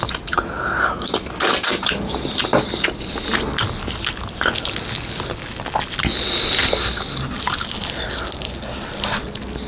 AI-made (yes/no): no